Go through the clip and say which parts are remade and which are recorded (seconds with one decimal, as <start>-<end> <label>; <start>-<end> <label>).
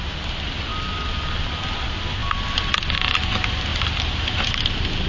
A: 0.0-5.1 recorded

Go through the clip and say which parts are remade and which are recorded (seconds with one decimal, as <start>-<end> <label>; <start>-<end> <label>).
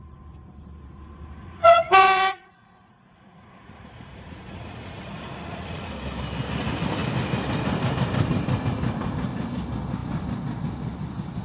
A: 0.0-1.4 recorded; 1.4-5.9 remade; 5.9-11.4 recorded